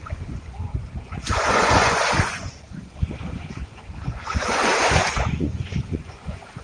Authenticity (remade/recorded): remade